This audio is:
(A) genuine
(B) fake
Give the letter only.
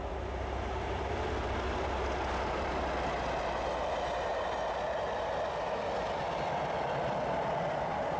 A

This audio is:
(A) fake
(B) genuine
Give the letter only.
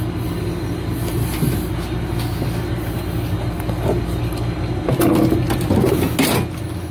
B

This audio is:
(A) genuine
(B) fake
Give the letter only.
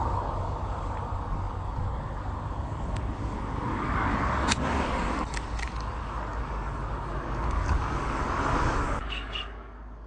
B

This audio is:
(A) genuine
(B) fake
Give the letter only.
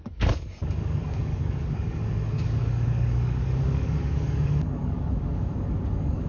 B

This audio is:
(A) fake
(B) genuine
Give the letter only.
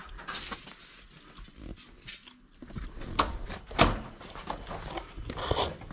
B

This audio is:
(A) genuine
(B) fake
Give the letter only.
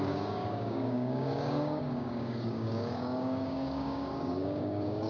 B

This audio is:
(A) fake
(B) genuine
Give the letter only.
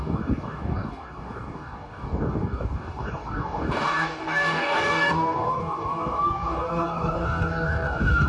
A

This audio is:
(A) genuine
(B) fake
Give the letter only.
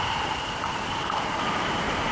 A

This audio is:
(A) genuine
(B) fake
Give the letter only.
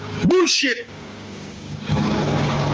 B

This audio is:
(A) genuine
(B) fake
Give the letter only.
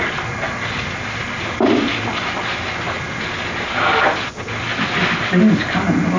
A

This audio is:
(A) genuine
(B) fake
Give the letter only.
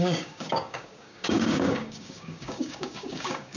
B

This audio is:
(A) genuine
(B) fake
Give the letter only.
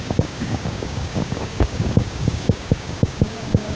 B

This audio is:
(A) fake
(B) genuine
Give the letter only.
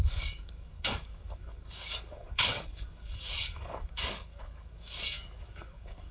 A